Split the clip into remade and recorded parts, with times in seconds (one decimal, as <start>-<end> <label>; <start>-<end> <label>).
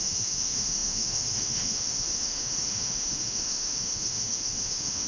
0.0-5.1 remade